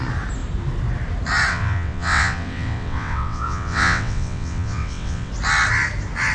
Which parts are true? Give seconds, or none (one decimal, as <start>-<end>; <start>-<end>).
0.0-1.5; 5.3-6.3